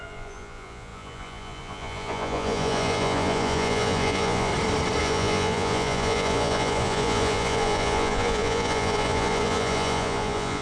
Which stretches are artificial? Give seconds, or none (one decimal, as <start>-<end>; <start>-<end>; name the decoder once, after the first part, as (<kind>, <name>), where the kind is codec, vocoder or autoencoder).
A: 0.0-4.5 (vocoder, Vocos); 5.0-10.6